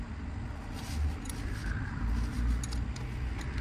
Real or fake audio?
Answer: real